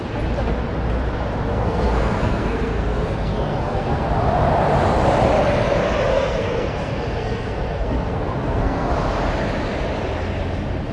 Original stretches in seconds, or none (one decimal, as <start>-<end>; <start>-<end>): 0.0-1.5; 4.1-6.1; 8.9-10.9